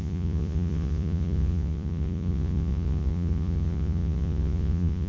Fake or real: fake